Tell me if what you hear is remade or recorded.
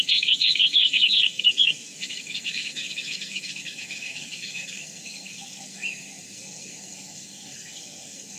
remade